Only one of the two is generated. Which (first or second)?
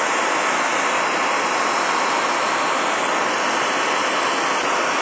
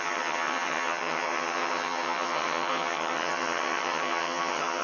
second